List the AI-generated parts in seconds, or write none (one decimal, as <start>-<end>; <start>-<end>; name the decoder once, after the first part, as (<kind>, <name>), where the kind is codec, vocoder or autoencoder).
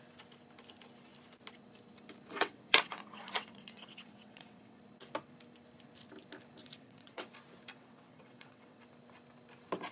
2.3-4.8 (vocoder, WaveNeXt); 6.6-7.3; 7.7-8.8